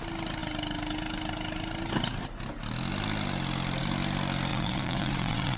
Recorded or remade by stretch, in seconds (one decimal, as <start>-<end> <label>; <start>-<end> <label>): 0.0-4.5 recorded; 4.5-5.6 remade